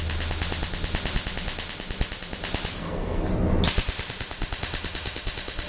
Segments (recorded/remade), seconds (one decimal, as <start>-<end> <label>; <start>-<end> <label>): 0.0-2.7 recorded; 2.7-3.3 remade; 3.3-5.7 recorded